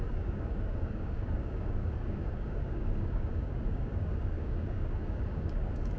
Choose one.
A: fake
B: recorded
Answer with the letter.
A